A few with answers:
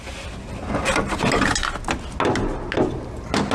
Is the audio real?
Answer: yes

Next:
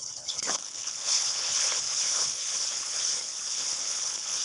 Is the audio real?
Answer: no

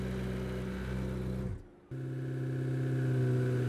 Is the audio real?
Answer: yes